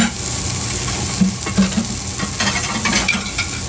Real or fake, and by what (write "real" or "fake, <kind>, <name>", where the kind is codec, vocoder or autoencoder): real